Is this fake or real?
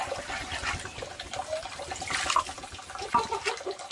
real